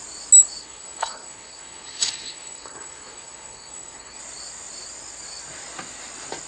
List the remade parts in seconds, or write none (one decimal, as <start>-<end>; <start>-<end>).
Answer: 0.6-4.2